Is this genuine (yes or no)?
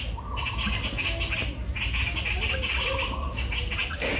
yes